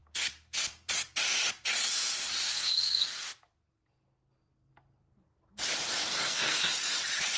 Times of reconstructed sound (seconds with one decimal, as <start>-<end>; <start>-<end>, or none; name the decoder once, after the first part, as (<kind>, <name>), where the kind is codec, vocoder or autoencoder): 2.5-3.3 (codec, SNAC); 6.0-6.7